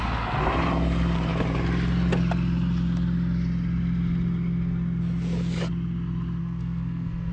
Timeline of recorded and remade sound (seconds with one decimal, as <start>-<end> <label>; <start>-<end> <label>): 0.0-6.4 recorded; 6.4-7.3 remade